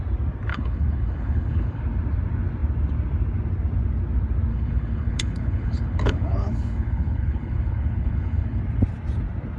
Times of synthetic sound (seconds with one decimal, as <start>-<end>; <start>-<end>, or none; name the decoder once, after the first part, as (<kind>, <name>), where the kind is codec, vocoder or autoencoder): 0.5-1.8 (codec, HILCodec); 4.5-8.6